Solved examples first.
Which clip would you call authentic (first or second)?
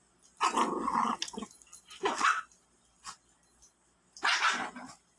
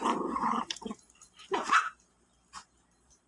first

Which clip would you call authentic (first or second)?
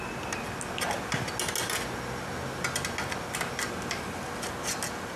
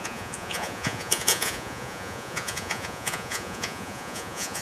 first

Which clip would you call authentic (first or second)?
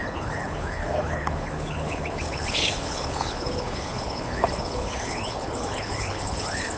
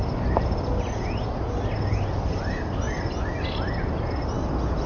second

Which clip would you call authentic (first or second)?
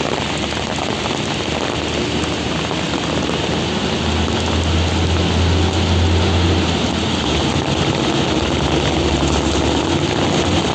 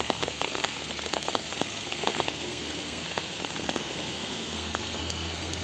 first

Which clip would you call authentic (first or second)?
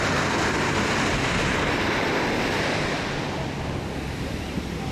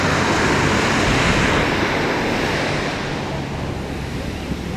second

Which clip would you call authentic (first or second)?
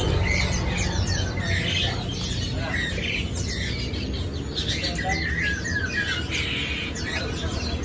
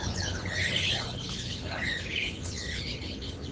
first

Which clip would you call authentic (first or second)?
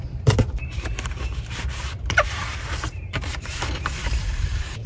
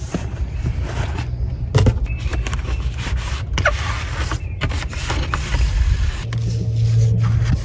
second